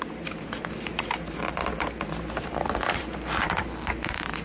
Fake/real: fake